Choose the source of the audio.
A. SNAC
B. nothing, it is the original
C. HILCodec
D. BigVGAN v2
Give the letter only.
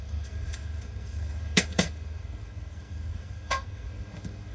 A